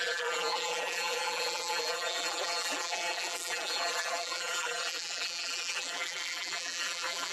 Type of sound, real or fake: fake